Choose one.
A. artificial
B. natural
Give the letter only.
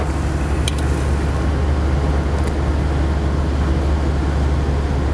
B